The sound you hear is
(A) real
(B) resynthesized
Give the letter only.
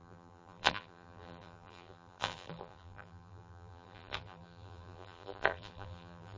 B